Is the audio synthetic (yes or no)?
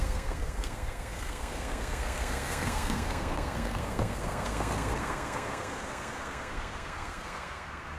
yes